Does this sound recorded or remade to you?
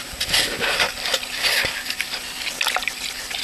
recorded